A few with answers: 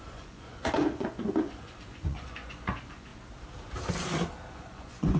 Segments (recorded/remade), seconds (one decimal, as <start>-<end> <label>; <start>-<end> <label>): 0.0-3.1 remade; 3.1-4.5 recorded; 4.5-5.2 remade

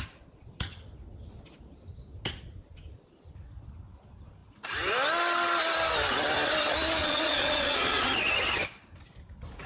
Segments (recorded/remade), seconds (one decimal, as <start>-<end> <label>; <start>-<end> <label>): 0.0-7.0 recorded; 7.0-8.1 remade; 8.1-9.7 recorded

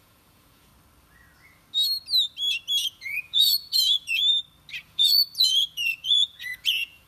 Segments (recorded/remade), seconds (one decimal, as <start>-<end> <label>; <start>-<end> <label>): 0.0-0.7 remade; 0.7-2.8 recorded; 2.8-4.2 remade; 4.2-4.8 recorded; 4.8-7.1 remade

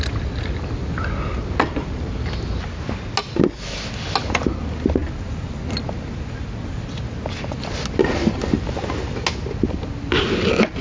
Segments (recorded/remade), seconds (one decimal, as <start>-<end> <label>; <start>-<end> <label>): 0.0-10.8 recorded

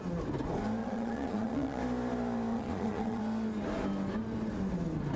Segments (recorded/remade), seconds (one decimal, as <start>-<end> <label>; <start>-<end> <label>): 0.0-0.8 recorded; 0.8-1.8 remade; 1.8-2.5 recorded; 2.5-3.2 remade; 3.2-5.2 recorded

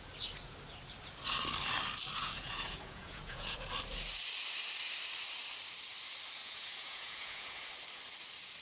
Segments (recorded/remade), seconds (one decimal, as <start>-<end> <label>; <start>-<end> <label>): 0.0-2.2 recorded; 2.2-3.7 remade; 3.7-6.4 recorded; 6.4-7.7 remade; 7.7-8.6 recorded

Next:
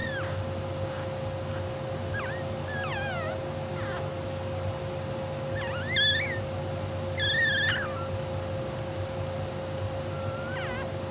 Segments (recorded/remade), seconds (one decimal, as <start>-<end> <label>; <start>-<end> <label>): 0.0-11.1 recorded